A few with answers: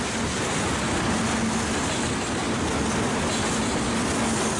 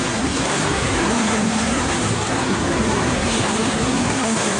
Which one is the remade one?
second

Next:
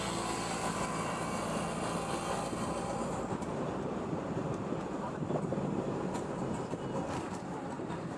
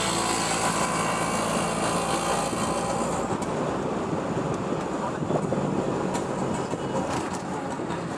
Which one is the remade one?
first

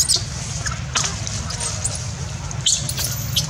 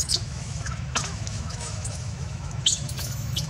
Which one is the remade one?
second